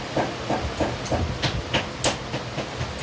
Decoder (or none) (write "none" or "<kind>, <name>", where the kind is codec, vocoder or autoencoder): none